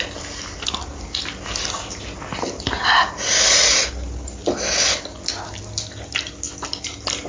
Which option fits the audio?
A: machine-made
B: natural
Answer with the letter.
B